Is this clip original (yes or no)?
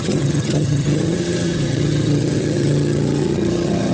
no